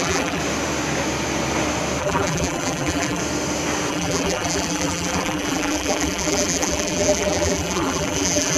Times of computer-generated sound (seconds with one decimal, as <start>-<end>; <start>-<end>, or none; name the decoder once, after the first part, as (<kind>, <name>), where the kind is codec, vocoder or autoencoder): 0.0-0.4 (vocoder, BigVGAN v2); 2.0-3.2; 3.9-8.6